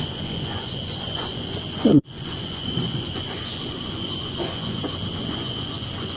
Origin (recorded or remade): remade